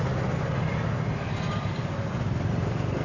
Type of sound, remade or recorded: recorded